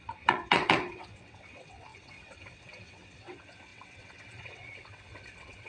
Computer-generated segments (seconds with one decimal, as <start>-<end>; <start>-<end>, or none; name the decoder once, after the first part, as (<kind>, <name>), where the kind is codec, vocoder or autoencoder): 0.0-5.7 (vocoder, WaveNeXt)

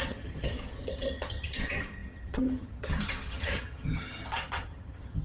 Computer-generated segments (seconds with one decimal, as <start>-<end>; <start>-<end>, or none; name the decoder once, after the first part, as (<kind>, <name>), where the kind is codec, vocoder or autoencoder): 0.0-5.2 (vocoder, HiFi-GAN)

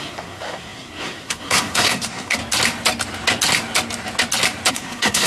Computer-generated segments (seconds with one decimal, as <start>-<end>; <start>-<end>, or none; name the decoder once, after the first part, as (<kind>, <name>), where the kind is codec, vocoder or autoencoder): 0.0-2.4 (codec, SNAC); 4.7-5.3

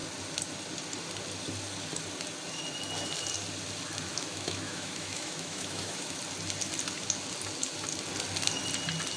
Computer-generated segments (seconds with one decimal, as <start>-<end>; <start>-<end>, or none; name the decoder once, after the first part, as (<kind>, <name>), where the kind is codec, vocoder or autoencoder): 4.1-6.2 (autoencoder, DAC-VAE)

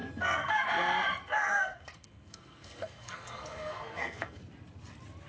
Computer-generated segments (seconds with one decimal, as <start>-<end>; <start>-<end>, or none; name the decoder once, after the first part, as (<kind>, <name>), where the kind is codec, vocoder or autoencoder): 0.0-0.7 (codec, SNAC); 1.2-4.4

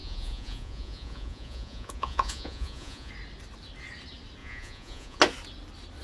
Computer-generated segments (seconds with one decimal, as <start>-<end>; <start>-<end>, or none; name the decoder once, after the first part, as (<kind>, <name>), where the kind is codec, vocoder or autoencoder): 0.0-3.1 (vocoder, Vocos); 4.4-5.2

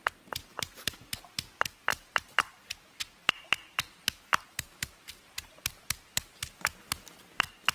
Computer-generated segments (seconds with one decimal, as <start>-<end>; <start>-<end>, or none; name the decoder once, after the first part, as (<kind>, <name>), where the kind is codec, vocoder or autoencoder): 0.5-1.2 (vocoder, BigVGAN v2); 1.9-3.4; 4.3-6.6